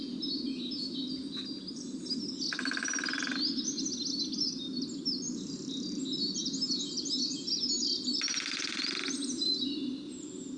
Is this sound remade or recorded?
recorded